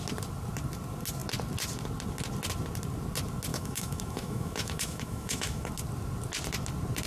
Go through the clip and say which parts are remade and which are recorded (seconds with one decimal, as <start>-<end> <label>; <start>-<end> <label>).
0.0-3.5 recorded; 3.5-5.7 remade; 5.7-7.1 recorded